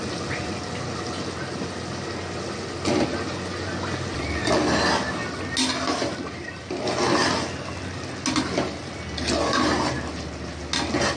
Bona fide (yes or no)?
yes